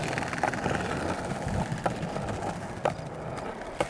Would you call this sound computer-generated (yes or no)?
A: no